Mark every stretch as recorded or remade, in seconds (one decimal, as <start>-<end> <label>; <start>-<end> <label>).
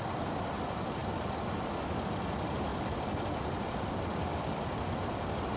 0.0-2.7 recorded; 2.7-4.8 remade; 4.8-5.6 recorded